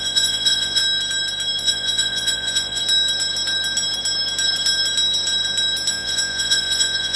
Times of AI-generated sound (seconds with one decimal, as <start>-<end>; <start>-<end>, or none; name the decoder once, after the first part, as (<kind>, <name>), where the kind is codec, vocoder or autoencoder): 0.0-0.8 (vocoder, Vocos); 1.6-2.8; 5.9-7.2